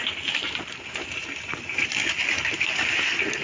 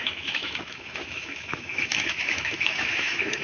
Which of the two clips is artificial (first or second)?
second